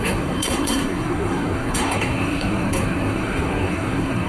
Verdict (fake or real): fake